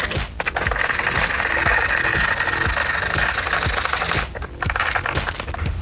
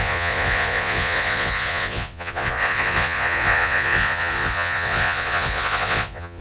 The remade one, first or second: second